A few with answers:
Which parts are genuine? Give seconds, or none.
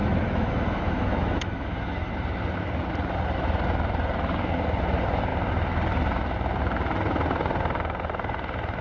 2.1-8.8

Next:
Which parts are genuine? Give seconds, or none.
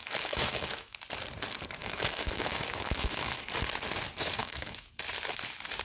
1.0-1.8; 3.5-4.4; 4.9-5.8